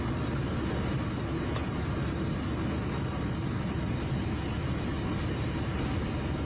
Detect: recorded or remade recorded